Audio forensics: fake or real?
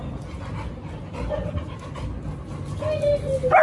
real